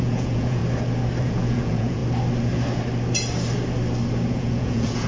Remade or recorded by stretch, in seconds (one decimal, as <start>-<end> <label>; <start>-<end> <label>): 0.0-0.6 remade; 0.6-1.2 recorded; 1.2-2.0 remade; 2.0-4.3 recorded; 4.3-5.1 remade